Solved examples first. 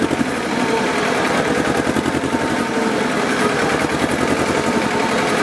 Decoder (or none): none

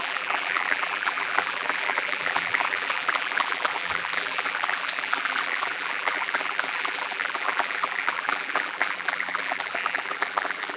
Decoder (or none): vocoder, BigVGAN v2